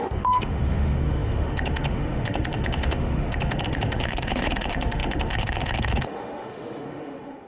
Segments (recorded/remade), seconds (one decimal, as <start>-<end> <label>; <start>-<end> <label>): 0.0-7.5 remade